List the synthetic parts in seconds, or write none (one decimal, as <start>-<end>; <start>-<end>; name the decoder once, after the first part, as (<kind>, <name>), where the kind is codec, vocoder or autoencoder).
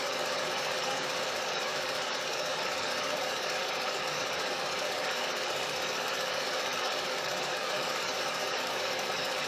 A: 0.0-9.5 (codec, DAC)